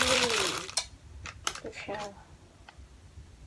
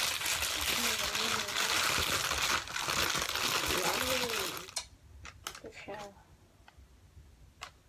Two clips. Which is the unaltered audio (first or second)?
second